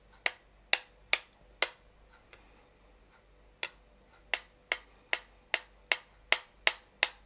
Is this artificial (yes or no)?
no